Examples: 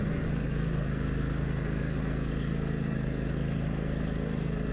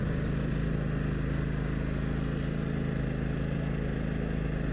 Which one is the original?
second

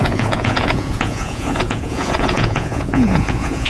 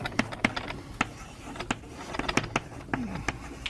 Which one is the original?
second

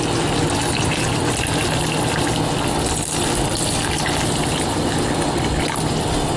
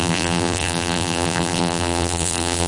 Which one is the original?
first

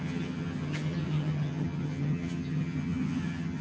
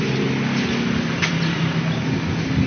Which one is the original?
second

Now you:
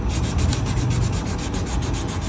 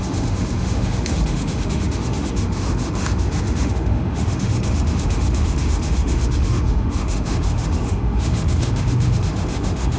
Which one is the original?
first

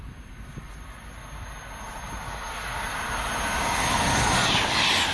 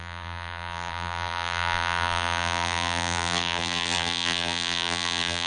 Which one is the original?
first